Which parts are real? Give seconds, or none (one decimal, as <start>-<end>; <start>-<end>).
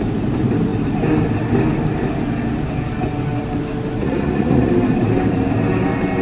0.0-4.0; 4.7-6.2